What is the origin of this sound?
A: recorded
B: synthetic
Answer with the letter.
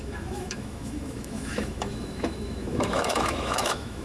B